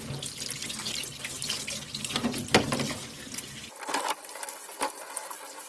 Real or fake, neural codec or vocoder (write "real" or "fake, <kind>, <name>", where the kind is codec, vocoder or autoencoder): real